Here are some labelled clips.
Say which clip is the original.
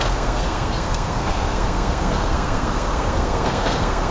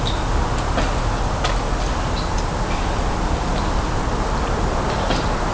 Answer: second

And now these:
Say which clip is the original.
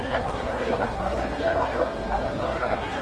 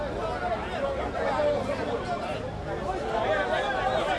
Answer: second